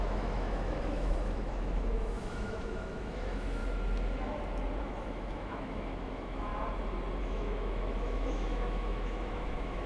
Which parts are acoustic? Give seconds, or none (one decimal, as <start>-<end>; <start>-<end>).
3.6-4.8; 6.5-7.2